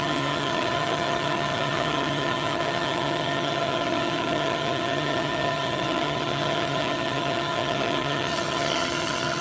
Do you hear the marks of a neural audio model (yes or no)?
yes